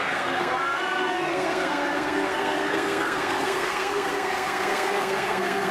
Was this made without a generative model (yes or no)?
no